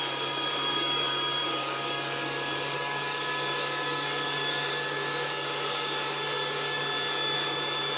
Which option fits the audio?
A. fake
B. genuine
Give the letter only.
A